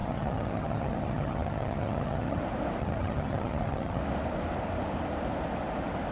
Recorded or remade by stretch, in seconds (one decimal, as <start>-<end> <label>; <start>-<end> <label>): 0.0-2.4 remade; 2.4-2.8 recorded; 2.8-4.0 remade; 4.0-6.1 recorded